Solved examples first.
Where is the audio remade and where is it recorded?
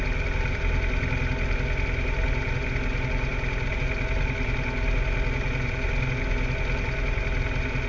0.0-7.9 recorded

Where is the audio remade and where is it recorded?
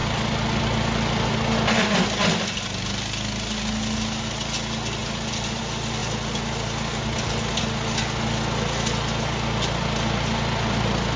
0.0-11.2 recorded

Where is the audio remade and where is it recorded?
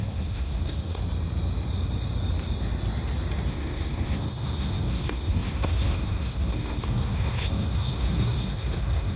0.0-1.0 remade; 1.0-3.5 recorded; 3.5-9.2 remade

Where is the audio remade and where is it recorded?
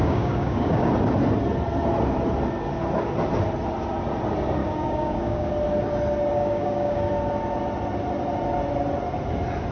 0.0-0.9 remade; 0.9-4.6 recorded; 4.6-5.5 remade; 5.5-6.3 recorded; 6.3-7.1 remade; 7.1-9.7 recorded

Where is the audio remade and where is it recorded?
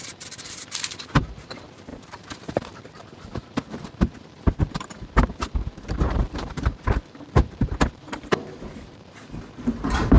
0.0-10.2 remade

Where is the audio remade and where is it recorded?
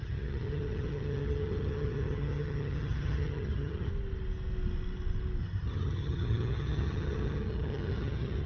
0.0-3.9 remade; 3.9-5.4 recorded; 5.4-8.5 remade